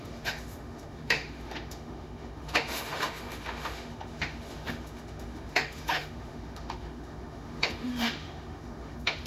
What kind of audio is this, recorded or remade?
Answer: remade